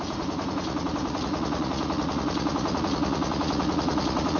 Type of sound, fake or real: fake